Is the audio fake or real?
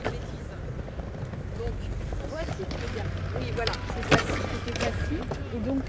real